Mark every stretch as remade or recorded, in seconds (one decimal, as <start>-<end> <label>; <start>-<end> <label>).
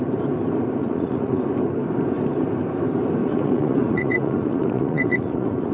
0.0-0.8 recorded; 0.8-1.4 remade; 1.4-3.2 recorded; 3.2-5.7 remade